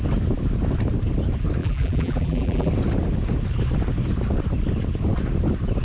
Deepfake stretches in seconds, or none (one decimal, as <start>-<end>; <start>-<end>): 1.6-2.7